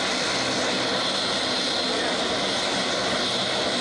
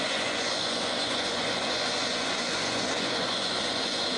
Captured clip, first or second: first